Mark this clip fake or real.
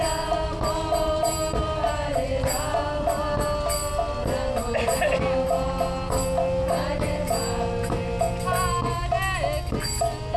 real